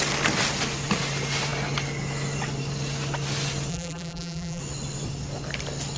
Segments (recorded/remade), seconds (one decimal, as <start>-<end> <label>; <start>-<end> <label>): 0.0-3.7 recorded; 3.7-4.6 remade; 4.6-6.0 recorded